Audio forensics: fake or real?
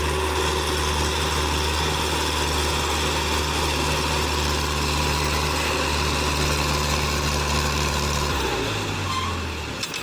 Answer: real